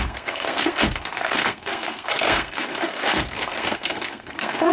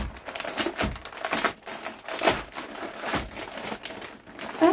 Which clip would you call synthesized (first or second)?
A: first